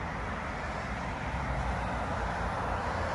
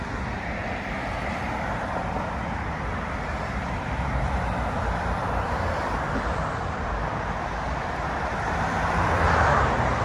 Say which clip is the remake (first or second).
second